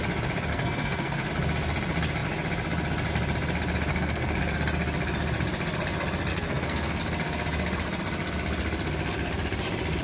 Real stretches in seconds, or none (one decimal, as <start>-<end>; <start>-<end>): 0.0-0.5; 1.3-3.9; 4.4-6.3; 7.0-10.0